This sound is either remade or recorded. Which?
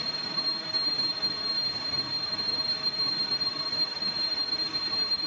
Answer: recorded